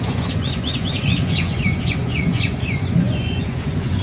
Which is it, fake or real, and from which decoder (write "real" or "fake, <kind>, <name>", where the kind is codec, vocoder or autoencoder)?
fake, vocoder, Vocos